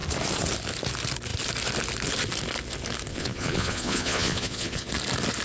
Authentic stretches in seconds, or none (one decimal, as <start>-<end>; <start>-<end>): 0.0-3.1; 4.9-5.4